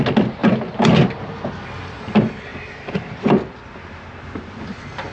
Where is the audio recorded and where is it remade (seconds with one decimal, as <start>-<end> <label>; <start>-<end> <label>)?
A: 0.0-5.1 recorded